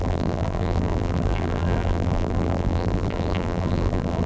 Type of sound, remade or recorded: remade